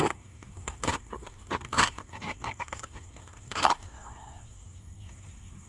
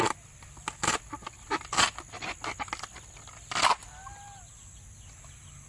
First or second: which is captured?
second